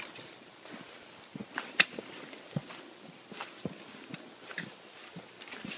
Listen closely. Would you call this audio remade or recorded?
recorded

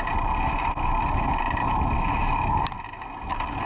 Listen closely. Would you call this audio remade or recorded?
recorded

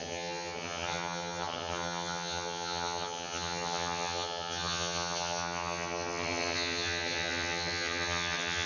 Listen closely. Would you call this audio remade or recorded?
remade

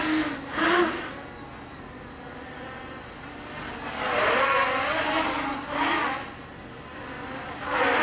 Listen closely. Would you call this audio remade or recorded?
recorded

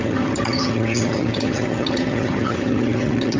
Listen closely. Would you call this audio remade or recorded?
remade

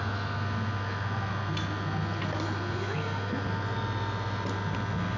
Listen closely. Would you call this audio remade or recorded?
recorded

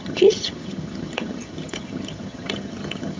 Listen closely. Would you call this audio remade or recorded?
remade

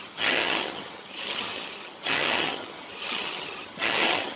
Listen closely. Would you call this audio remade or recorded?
remade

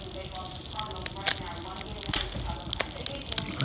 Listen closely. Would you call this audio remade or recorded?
recorded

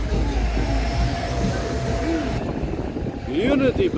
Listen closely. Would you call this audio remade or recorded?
recorded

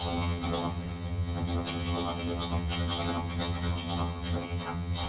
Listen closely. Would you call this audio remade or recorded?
remade